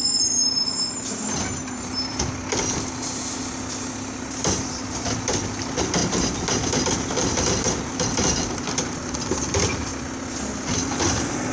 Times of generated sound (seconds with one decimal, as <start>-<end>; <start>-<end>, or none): 6.0-6.7; 7.2-7.8